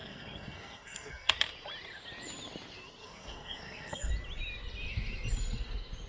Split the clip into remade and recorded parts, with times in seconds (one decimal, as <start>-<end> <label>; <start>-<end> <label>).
0.0-1.3 remade; 1.3-3.0 recorded; 3.0-4.1 remade; 4.1-6.1 recorded